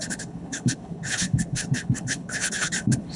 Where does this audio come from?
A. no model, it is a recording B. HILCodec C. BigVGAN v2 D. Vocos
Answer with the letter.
B